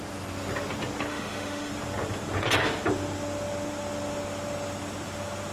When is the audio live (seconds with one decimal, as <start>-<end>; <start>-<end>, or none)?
0.0-1.1; 1.7-5.5